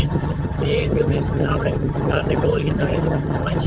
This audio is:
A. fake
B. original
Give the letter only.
A